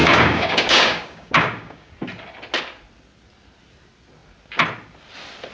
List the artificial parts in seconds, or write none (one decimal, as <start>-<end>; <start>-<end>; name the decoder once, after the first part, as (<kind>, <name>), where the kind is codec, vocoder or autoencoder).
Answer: 0.0-1.9 (codec, DAC)